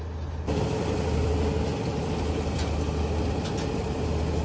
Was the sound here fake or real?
real